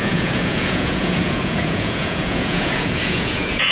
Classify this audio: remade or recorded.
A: remade